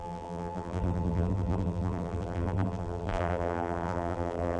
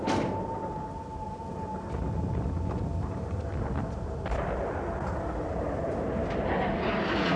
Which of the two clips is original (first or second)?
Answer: second